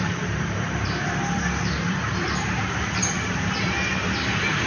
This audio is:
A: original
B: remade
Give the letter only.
B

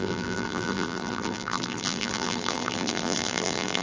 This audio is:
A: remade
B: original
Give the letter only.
A